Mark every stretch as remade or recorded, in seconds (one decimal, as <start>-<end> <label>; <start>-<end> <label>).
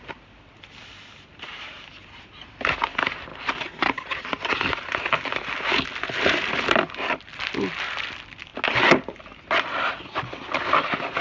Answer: 0.0-11.2 recorded